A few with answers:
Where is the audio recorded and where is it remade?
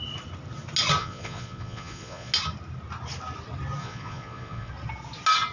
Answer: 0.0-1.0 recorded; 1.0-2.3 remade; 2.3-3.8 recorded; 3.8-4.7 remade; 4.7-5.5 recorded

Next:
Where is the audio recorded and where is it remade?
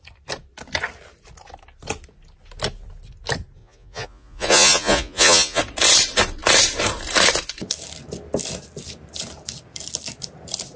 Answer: 0.0-3.6 recorded; 3.6-5.6 remade; 5.6-10.8 recorded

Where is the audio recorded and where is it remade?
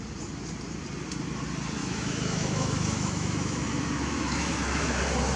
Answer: 0.0-1.8 recorded; 1.8-5.0 remade; 5.0-5.4 recorded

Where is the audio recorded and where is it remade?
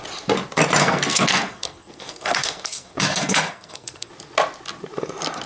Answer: 0.0-0.8 recorded; 0.8-4.1 remade; 4.1-5.5 recorded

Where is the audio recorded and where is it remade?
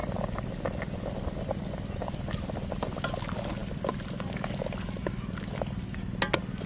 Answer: 0.0-6.7 recorded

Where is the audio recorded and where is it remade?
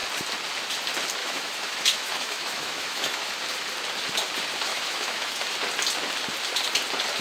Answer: 0.0-1.2 recorded; 1.2-3.3 remade; 3.3-4.7 recorded; 4.7-5.4 remade; 5.4-7.2 recorded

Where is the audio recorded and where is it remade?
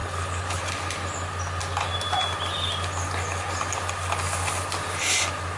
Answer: 0.0-0.6 remade; 0.6-5.6 recorded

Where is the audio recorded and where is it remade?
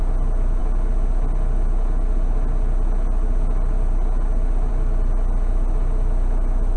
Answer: 0.0-6.8 recorded